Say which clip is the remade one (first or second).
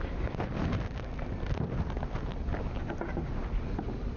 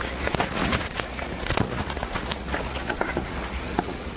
second